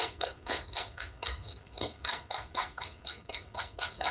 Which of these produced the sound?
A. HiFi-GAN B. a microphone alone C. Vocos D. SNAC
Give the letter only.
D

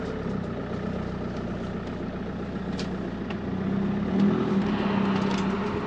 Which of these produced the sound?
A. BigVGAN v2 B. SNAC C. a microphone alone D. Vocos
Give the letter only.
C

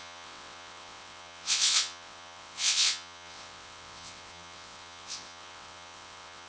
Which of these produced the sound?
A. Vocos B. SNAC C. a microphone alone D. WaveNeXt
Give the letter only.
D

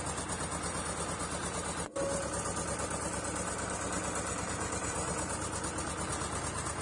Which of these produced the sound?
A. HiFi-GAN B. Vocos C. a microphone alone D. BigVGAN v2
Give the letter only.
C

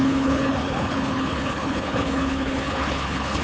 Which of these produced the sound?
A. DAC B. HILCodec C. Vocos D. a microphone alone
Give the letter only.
B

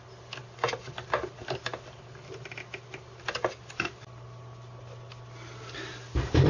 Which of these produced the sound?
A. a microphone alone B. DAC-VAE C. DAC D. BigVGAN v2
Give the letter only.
A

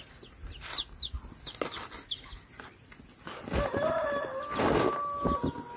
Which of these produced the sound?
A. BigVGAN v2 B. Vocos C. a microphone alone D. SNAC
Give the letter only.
C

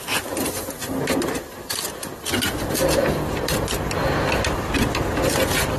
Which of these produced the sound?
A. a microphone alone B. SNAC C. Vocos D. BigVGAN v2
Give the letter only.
D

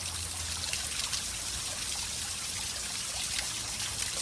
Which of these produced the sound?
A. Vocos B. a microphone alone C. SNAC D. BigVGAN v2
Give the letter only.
B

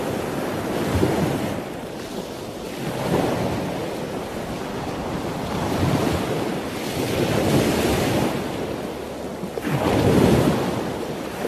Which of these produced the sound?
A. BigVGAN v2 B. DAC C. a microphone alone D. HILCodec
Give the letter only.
C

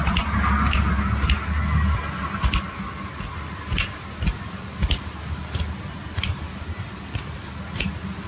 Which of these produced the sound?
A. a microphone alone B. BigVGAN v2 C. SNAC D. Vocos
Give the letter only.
A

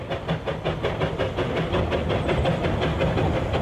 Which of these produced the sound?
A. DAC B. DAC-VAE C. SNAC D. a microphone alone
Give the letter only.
D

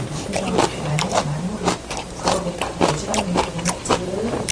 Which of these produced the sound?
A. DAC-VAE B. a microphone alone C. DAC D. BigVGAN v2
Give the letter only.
D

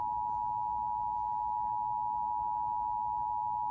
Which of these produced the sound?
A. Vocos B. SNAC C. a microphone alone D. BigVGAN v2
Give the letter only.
C